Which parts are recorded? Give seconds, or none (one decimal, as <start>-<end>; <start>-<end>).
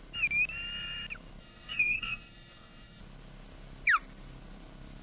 0.0-1.4; 3.0-5.0